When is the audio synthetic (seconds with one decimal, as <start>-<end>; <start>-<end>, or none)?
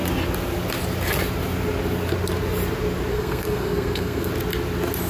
3.1-4.3